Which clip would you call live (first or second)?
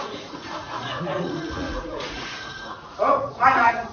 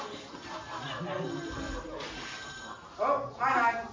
second